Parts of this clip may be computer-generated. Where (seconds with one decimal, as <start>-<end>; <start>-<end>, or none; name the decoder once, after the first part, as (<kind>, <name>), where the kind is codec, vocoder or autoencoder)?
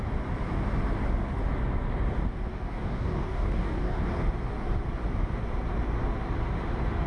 2.5-4.1 (codec, DAC)